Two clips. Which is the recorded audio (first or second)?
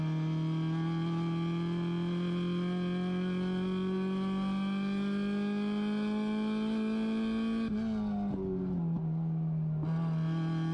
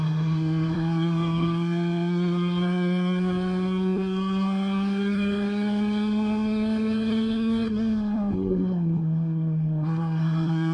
first